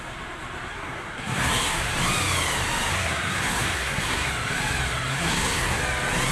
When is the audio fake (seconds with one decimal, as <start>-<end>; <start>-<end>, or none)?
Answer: 0.7-1.9; 2.9-4.3; 5.1-5.8